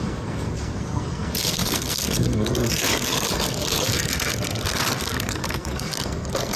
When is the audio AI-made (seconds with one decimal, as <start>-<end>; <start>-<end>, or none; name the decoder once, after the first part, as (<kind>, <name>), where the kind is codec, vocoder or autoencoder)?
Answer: 0.0-6.6 (codec, SNAC)